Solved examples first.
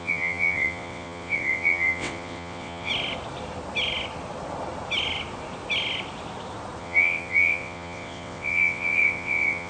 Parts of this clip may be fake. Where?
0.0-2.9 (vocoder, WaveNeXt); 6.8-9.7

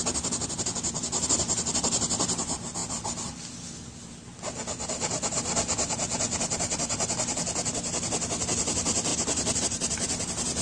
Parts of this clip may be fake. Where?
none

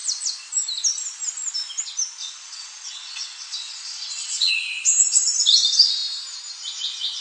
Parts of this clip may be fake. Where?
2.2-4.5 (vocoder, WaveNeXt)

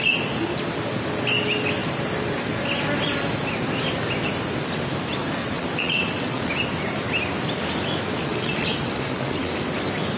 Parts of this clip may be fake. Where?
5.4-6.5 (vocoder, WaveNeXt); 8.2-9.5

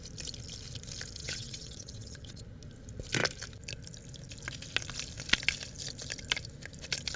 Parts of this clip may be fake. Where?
1.2-2.4 (vocoder, WaveNeXt)

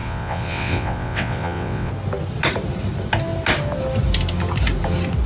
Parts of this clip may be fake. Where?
0.0-1.9 (vocoder, WaveNeXt)